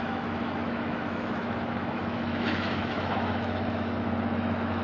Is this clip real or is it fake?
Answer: fake